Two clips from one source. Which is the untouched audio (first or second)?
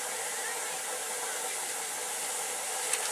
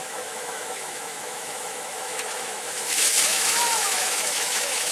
first